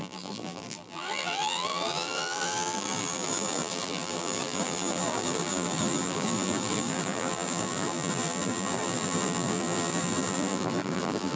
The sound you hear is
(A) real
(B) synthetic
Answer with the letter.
B